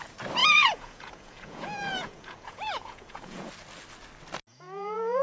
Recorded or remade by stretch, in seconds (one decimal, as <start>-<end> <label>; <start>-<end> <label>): 0.0-0.4 recorded; 0.4-3.5 remade; 3.5-4.5 recorded; 4.5-5.2 remade

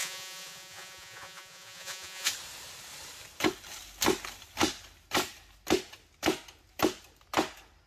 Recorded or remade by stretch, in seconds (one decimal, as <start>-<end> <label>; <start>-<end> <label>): 0.0-2.3 remade; 2.3-7.9 recorded

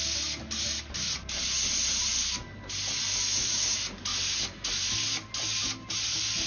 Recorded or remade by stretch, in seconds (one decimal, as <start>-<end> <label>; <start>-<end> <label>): 0.0-6.5 recorded